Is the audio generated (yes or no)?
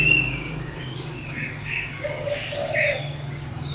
yes